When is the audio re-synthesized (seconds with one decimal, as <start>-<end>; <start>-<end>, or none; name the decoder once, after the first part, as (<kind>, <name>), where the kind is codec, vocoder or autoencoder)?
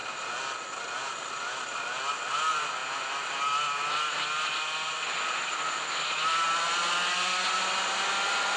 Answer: none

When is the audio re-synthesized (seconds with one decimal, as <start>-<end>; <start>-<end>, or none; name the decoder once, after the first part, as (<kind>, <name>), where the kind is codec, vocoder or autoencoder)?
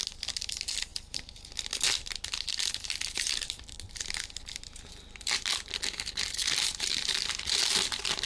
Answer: none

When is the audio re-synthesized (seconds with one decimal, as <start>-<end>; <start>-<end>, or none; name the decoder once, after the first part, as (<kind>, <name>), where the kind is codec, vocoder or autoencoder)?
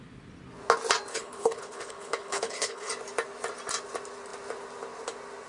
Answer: 1.1-2.9 (codec, HILCodec)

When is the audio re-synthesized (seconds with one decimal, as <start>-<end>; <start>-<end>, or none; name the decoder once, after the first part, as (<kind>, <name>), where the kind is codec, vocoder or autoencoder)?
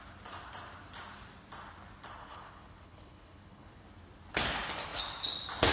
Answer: 2.2-3.8 (codec, HILCodec)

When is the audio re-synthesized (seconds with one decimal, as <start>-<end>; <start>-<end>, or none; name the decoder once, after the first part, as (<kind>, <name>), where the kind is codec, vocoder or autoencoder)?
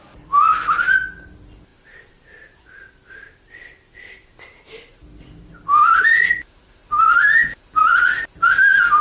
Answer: none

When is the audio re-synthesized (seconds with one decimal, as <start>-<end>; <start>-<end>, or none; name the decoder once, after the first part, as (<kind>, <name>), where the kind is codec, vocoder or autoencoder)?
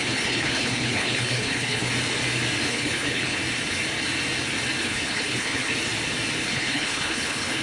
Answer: 0.0-1.9 (codec, HILCodec); 2.7-3.4; 4.8-5.7; 6.4-7.6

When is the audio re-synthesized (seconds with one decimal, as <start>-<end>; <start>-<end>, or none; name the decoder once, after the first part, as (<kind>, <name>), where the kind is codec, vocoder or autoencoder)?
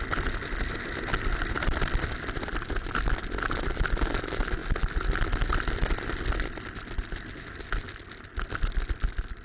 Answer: none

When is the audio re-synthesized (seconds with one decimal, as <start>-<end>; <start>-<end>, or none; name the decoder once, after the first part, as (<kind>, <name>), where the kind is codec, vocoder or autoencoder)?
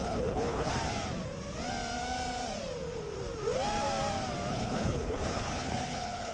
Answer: 0.0-0.7 (codec, HILCodec); 4.5-6.3